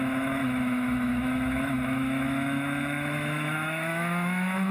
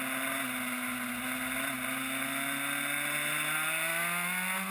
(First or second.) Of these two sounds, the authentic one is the second